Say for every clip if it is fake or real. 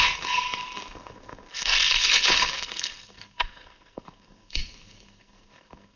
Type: fake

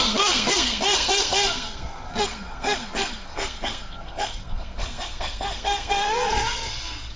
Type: fake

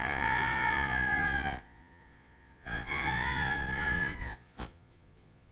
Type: fake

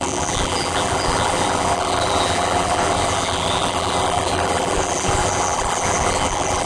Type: fake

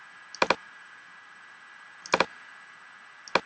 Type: real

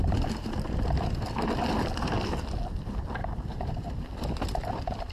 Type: fake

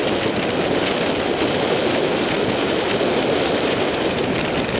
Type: real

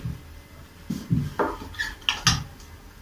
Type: real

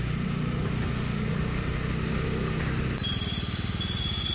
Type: real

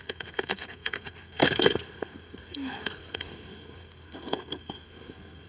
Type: fake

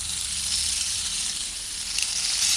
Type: real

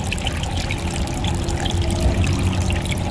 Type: real